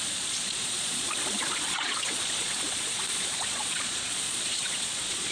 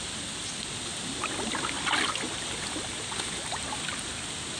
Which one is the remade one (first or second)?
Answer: first